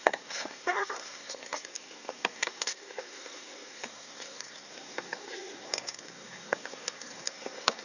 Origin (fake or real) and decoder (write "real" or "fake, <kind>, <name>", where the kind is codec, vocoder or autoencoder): fake, codec, SNAC